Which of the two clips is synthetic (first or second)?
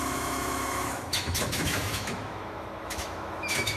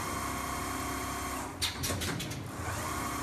first